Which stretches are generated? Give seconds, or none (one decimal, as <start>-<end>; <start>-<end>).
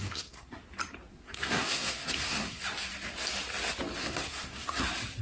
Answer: 0.0-0.6; 1.1-2.6; 4.0-4.8